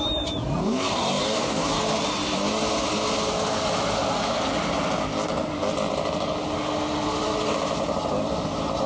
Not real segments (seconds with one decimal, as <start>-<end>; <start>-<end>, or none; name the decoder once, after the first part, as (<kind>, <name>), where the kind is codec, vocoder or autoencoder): 0.6-1.8 (codec, DAC)